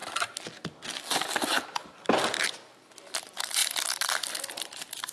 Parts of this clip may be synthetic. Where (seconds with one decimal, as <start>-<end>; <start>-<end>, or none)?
3.1-3.6; 4.5-5.1